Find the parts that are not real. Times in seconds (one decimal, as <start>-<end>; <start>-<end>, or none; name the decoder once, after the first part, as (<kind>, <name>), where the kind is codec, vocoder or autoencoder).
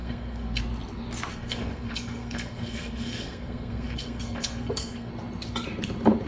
0.0-0.6 (codec, SNAC); 1.3-5.1